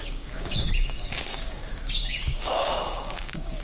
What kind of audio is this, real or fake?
fake